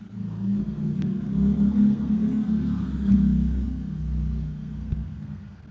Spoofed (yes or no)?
yes